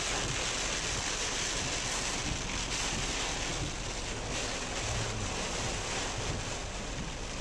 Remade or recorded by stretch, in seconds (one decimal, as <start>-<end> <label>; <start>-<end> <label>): 0.0-3.5 recorded; 3.5-4.1 remade; 4.1-7.4 recorded